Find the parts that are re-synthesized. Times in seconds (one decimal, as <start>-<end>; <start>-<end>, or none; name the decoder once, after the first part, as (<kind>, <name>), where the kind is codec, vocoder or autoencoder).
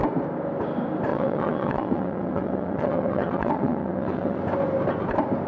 1.1-4.4 (vocoder, WaveNeXt)